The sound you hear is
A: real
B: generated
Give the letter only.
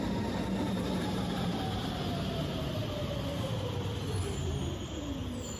A